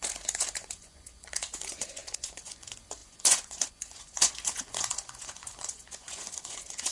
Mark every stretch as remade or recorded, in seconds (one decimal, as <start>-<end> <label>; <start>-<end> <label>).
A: 0.0-6.9 remade